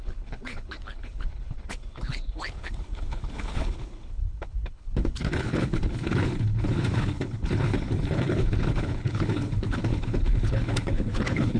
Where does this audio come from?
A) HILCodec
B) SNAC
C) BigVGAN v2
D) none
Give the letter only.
A